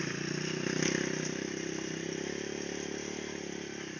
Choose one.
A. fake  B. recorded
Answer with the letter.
B